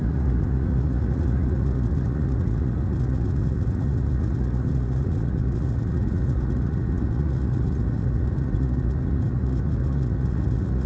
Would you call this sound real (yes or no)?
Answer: no